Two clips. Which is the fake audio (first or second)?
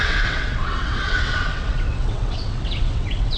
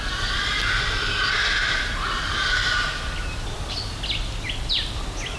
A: first